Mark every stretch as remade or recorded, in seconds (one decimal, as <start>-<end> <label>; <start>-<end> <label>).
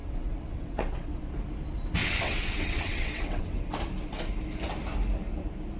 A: 0.0-1.2 remade; 1.2-2.0 recorded; 2.0-3.8 remade; 3.8-5.8 recorded